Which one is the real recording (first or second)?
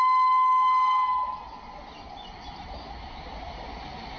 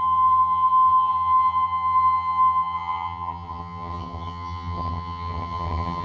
first